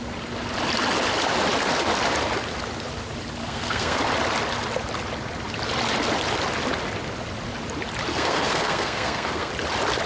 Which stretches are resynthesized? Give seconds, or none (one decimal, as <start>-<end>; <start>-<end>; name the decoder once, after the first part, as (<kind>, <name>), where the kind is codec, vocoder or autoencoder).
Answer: 3.4-4.0 (codec, SNAC); 8.1-9.5